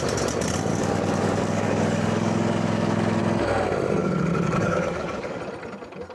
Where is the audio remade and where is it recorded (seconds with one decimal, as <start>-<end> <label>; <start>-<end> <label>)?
0.0-0.7 recorded; 0.7-3.2 remade; 3.2-4.0 recorded; 4.0-5.4 remade; 5.4-6.1 recorded